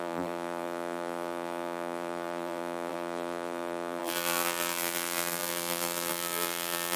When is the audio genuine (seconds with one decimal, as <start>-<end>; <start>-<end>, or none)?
none